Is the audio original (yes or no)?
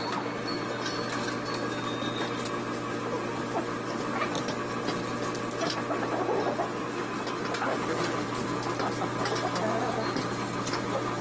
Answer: yes